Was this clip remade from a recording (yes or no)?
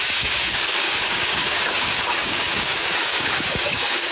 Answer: yes